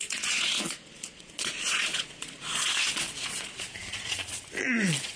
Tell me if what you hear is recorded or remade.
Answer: remade